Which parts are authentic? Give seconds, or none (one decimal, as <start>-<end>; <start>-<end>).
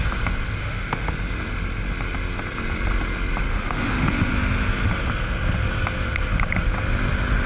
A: 0.0-0.6; 1.1-3.5; 4.3-7.5